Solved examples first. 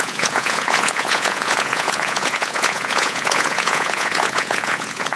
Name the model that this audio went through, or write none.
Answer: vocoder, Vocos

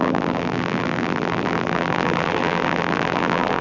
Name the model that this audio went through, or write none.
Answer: vocoder, BigVGAN v2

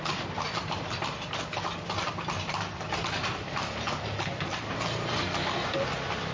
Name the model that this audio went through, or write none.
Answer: none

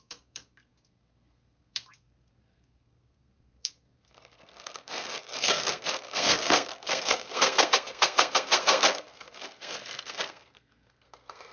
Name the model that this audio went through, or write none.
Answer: codec, SNAC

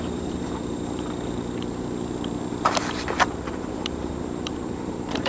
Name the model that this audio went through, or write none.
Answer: vocoder, BigVGAN v2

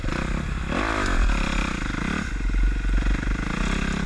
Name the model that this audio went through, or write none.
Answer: none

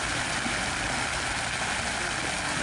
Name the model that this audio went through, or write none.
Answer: none